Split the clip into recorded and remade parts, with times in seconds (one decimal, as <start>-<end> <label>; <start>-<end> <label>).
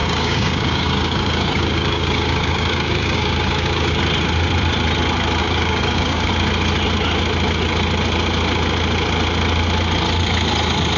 0.0-4.0 remade; 4.0-5.4 recorded; 5.4-6.3 remade; 6.3-11.0 recorded